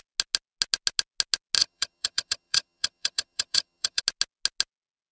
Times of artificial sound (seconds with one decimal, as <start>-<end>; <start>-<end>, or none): 1.6-4.0